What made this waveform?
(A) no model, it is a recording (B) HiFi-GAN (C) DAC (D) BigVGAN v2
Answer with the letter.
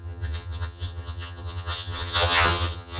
B